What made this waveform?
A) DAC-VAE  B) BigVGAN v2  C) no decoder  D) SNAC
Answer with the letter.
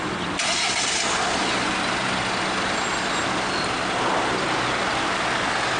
C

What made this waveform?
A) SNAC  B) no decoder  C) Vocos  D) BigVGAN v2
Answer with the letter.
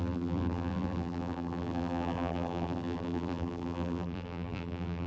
D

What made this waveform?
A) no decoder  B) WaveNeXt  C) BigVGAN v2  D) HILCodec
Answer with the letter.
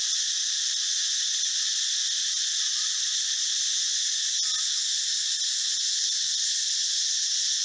A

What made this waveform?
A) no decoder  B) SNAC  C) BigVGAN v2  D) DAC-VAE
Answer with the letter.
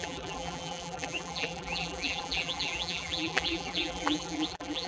C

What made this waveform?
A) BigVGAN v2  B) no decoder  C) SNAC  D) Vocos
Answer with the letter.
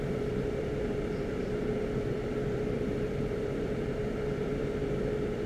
A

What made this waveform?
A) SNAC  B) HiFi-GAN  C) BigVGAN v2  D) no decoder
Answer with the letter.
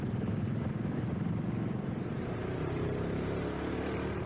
C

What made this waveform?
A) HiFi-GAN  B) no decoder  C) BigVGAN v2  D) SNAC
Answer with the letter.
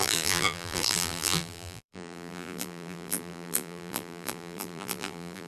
C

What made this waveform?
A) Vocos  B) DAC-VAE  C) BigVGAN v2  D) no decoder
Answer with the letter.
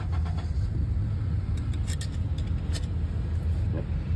D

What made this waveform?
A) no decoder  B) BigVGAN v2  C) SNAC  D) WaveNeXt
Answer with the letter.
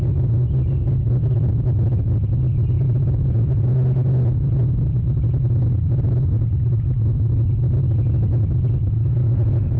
A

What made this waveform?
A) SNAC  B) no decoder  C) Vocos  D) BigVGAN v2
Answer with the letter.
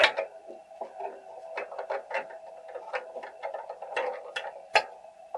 B